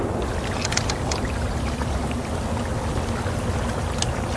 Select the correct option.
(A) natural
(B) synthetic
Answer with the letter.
A